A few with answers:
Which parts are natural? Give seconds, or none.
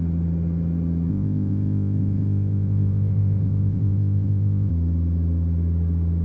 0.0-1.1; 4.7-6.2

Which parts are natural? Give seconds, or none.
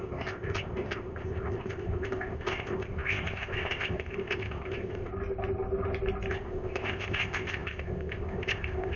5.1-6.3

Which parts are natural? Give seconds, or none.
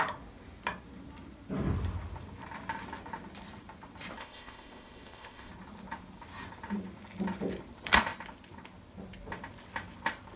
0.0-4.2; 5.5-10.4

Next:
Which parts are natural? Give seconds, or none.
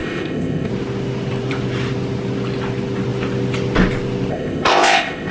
0.7-4.3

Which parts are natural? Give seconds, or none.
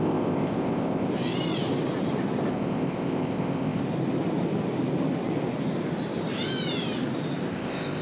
1.1-2.5; 3.8-7.5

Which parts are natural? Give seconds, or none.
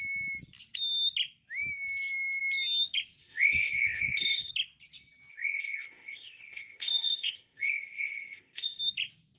0.0-3.2; 4.5-5.3; 8.8-9.4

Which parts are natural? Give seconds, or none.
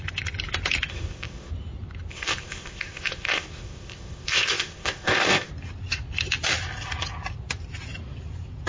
0.0-0.9; 1.5-2.1; 5.5-8.7